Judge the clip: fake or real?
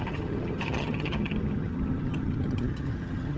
fake